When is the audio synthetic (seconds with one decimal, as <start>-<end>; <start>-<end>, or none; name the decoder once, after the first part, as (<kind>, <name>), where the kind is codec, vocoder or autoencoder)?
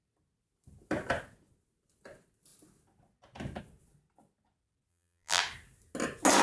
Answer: 4.9-5.4 (vocoder, BigVGAN v2)